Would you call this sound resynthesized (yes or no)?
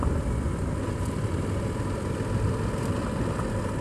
no